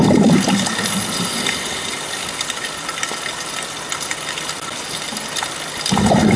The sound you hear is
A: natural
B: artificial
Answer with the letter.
A